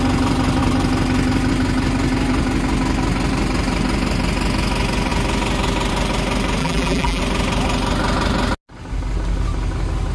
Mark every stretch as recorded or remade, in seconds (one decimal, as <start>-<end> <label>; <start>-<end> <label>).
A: 0.0-6.6 recorded; 6.6-7.2 remade; 7.2-10.1 recorded